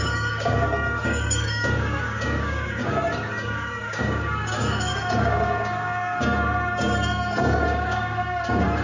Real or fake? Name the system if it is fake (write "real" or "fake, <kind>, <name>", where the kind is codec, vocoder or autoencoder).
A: fake, codec, DAC